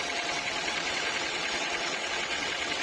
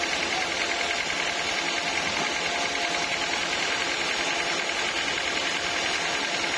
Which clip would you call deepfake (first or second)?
first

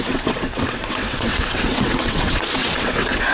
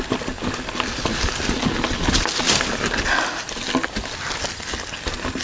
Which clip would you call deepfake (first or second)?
first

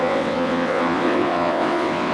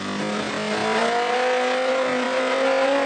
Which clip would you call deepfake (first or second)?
first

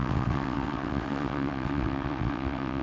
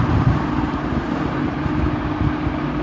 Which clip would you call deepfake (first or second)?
first